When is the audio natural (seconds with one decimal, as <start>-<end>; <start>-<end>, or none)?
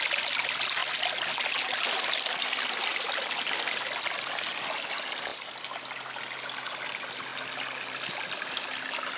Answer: 0.0-9.2